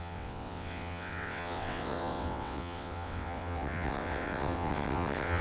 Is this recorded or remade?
remade